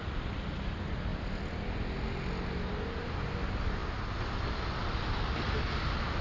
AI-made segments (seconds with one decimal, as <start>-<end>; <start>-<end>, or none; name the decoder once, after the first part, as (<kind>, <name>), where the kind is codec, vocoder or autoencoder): none